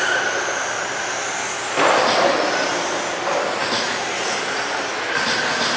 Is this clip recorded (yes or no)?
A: yes